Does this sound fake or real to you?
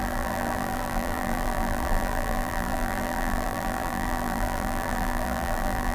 fake